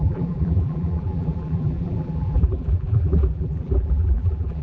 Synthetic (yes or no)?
yes